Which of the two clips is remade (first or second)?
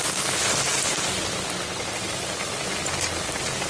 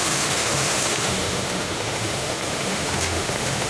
second